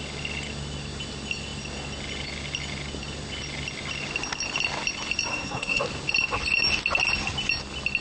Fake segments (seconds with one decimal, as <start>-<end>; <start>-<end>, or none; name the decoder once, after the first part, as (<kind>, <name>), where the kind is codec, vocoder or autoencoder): 5.3-5.8 (codec, SNAC)